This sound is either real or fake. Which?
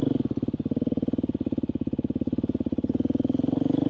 real